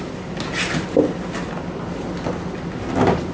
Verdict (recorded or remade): recorded